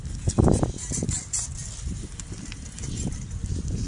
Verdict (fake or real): fake